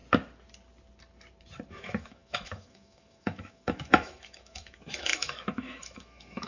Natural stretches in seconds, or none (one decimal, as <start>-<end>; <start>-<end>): 0.0-1.7